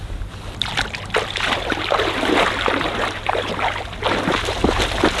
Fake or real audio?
real